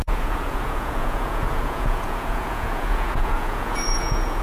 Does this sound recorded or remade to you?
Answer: remade